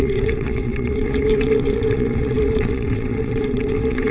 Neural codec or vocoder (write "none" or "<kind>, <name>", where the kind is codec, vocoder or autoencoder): vocoder, WaveNeXt